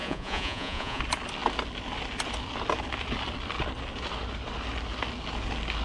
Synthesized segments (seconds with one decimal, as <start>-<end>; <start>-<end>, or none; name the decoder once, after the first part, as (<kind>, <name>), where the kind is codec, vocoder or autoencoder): 0.0-1.0 (vocoder, Vocos)